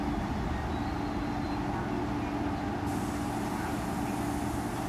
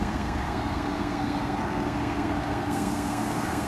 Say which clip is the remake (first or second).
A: second